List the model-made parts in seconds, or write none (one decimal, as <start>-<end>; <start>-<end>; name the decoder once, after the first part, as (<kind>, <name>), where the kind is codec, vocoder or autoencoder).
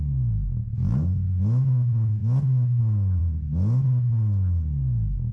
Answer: 0.0-3.2 (autoencoder, DAC-VAE)